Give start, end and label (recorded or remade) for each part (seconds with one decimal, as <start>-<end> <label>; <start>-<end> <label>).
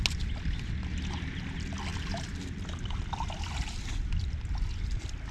0.0-5.3 recorded